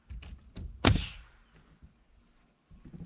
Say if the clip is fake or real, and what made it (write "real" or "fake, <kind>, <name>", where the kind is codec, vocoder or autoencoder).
real